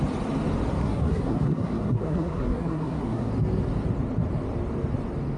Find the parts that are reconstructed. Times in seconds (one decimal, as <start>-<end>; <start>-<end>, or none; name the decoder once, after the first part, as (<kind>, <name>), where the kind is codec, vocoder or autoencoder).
0.8-3.3 (codec, SNAC)